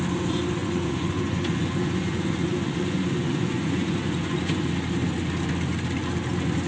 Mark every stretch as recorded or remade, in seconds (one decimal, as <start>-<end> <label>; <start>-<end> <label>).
0.0-0.6 recorded; 0.6-4.6 remade; 4.6-6.7 recorded